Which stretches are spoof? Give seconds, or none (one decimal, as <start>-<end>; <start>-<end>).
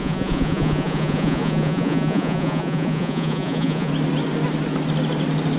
0.0-3.9